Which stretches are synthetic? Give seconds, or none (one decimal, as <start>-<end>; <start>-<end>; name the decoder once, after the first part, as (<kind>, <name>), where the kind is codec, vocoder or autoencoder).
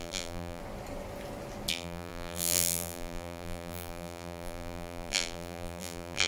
0.0-0.6 (vocoder, BigVGAN v2); 1.7-6.3